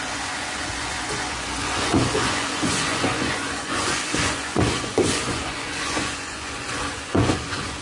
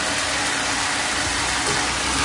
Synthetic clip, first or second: first